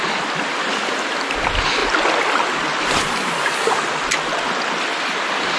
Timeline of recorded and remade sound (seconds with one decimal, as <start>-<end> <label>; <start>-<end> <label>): 0.0-5.6 recorded